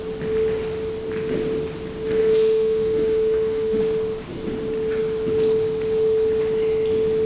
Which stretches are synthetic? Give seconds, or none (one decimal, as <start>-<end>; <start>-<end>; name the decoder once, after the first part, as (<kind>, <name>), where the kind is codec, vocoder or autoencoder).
2.2-3.8 (autoencoder, DAC-VAE)